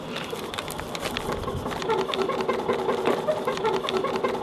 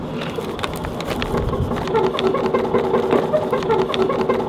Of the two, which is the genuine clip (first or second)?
second